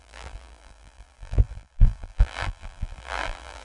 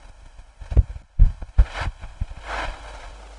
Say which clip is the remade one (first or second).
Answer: first